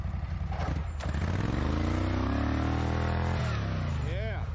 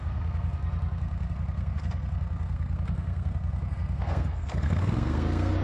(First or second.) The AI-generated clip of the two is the second